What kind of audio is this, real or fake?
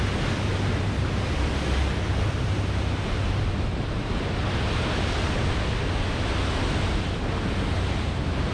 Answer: real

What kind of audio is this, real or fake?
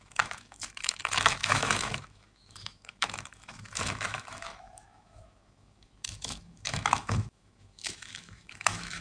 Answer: fake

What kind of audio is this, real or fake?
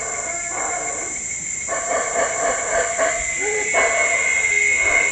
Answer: real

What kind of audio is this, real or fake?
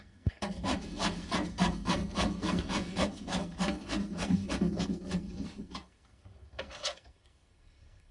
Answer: fake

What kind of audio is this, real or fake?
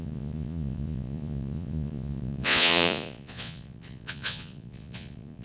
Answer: fake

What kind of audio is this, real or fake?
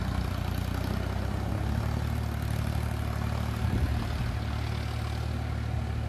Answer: real